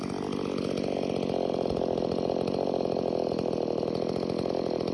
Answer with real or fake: real